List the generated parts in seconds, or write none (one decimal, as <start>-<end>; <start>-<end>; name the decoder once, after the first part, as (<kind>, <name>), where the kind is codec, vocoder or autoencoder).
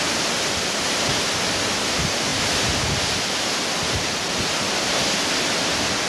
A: none